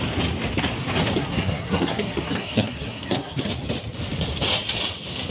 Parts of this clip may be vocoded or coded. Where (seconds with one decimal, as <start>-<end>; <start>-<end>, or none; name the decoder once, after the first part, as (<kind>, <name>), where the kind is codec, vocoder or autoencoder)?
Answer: 1.2-3.4 (codec, SNAC)